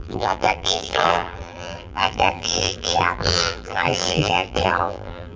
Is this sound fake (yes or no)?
yes